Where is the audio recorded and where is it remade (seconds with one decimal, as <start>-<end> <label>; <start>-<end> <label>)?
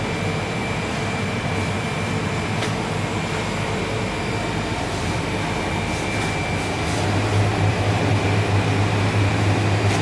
0.0-0.6 recorded; 0.6-5.8 remade; 5.8-7.5 recorded; 7.5-8.1 remade; 8.1-10.0 recorded